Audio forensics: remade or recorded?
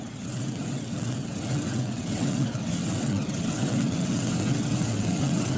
remade